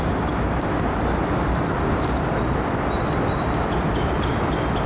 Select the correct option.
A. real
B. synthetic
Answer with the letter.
A